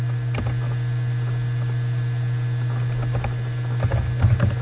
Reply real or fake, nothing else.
real